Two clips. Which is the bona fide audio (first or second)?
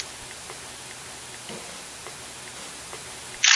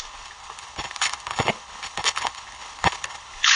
first